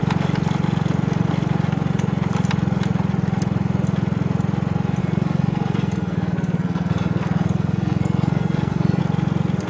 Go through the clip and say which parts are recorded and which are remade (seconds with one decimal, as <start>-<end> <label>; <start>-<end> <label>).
0.0-5.0 recorded; 5.0-9.0 remade; 9.0-9.7 recorded